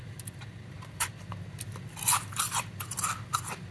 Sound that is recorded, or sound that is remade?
recorded